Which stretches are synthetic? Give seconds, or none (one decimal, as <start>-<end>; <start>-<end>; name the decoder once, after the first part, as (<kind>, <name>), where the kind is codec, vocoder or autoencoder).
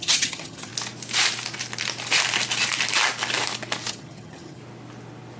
0.0-0.7 (vocoder, HiFi-GAN); 3.9-4.6